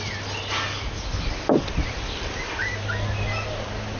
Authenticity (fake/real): real